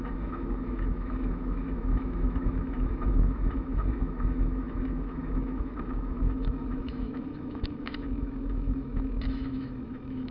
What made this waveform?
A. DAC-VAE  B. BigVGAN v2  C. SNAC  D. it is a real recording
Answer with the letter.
A